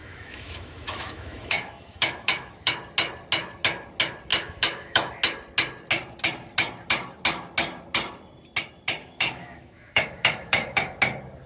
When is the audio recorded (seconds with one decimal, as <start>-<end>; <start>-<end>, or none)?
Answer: 2.7-4.3; 5.1-9.0; 11.0-11.5